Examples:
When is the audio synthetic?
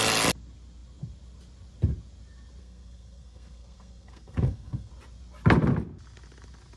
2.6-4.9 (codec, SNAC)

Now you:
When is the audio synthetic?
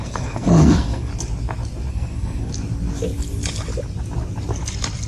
0.0-1.1 (codec, SNAC); 1.9-2.5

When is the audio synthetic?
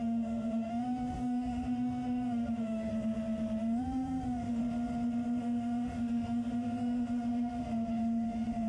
0.0-2.9 (autoencoder, DAC-VAE); 3.8-4.6; 5.4-7.6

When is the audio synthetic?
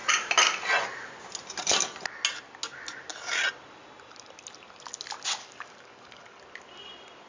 5.4-6.4 (codec, DAC)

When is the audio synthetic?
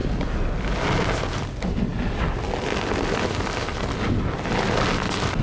none